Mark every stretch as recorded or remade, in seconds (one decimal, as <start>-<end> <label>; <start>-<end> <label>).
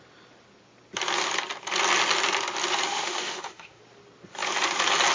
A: 0.0-2.9 recorded; 2.9-3.8 remade; 3.8-5.1 recorded